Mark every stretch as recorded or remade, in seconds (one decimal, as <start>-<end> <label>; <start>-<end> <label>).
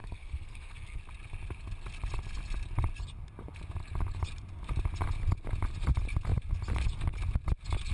0.0-1.0 remade; 1.0-7.9 recorded